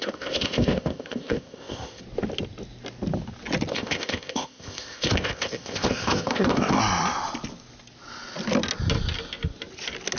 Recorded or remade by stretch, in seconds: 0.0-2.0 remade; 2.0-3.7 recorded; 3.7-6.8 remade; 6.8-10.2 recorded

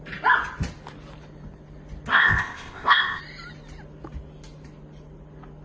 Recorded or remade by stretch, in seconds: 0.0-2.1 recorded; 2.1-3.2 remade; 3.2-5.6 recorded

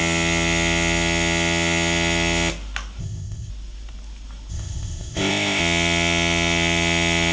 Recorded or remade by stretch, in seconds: 0.0-3.0 recorded; 3.0-3.5 remade; 3.5-4.5 recorded; 4.5-5.6 remade; 5.6-7.3 recorded